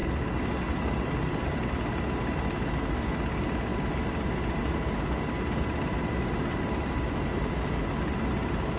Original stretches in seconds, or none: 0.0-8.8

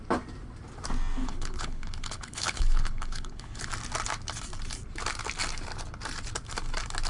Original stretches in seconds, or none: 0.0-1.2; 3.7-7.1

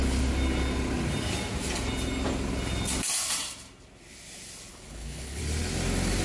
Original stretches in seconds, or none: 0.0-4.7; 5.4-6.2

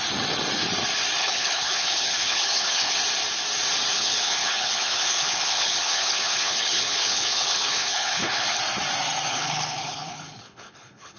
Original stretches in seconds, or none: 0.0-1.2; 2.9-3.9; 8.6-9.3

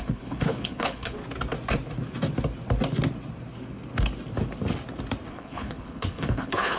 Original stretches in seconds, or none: 1.2-5.3

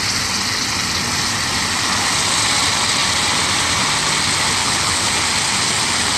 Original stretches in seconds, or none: 0.0-4.6; 5.1-6.2

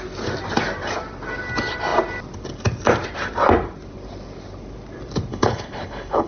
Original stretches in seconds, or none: 0.0-5.3